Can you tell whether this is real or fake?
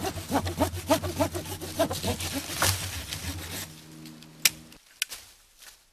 real